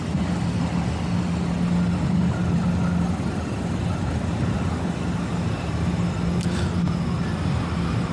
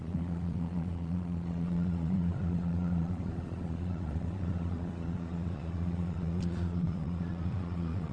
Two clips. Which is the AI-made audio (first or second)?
second